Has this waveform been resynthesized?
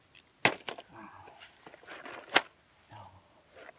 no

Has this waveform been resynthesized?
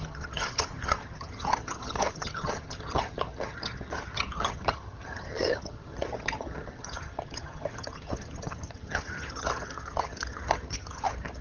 yes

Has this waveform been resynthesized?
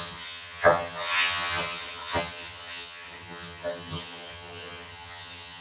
yes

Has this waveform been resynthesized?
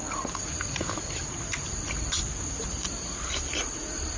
no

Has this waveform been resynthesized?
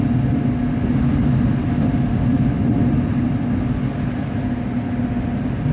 no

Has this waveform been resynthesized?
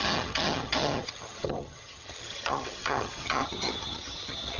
yes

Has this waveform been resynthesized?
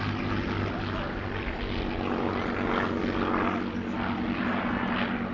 no